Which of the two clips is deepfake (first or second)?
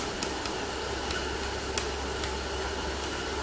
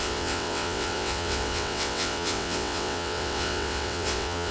second